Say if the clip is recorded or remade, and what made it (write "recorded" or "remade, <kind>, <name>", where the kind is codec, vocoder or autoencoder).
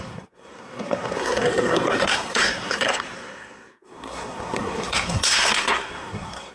remade, codec, SNAC